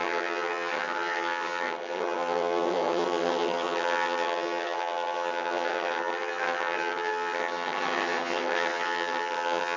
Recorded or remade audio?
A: remade